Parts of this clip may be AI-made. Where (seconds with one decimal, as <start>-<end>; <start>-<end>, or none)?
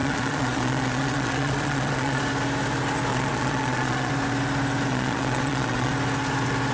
0.0-2.2; 3.1-4.1; 4.9-5.9